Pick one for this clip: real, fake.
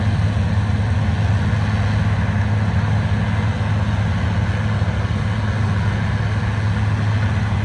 real